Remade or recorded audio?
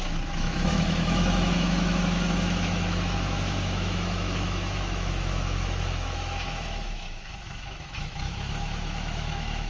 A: remade